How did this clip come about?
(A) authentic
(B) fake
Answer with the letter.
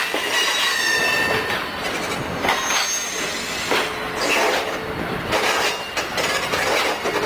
A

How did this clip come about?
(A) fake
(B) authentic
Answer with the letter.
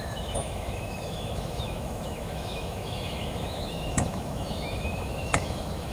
A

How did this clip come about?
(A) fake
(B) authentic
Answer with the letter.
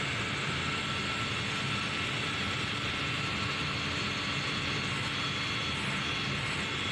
B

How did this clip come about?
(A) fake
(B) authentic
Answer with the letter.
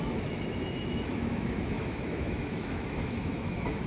A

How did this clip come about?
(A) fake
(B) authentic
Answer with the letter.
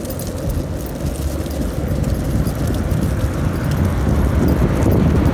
B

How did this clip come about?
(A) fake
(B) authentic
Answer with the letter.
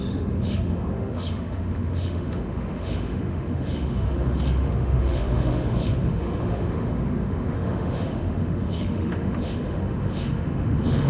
A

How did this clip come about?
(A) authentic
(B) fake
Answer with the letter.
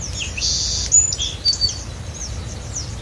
A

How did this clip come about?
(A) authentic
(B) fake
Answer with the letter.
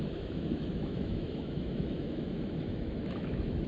B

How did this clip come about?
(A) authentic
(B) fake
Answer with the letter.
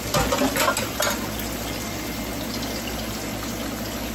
A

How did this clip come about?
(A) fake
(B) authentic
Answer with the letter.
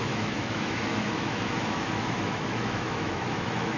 A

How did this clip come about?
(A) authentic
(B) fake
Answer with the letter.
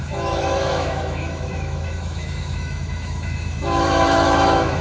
B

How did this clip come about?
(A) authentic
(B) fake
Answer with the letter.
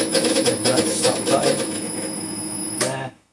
B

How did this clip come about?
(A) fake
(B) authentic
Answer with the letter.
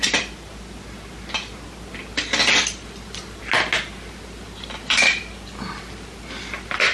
B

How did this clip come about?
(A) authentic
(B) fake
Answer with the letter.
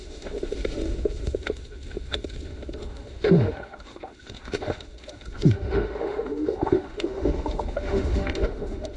B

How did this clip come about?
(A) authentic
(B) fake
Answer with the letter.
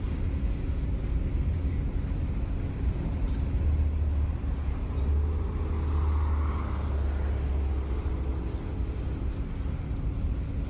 A